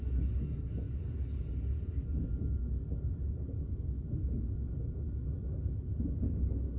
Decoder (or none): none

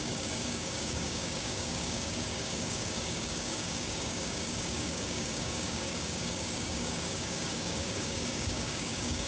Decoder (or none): codec, DAC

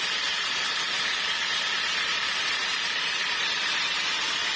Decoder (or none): vocoder, BigVGAN v2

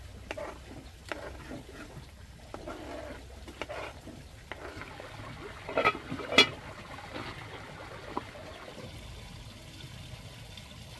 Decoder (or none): none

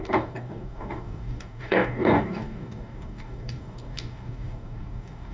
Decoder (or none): codec, DAC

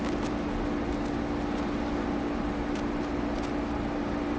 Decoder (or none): none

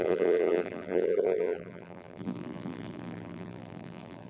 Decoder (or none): vocoder, BigVGAN v2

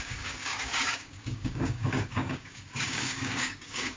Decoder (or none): codec, DAC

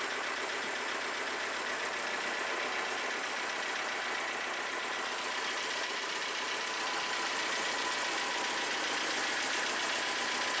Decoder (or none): none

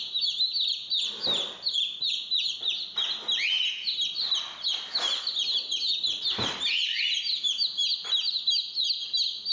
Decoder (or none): none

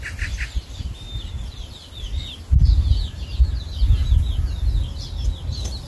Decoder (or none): none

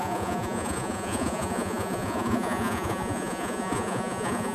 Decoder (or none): vocoder, Vocos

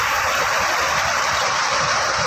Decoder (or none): vocoder, BigVGAN v2